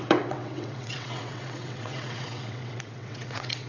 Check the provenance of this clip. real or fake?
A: fake